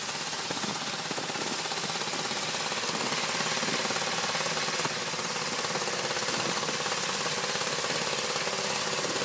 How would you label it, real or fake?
real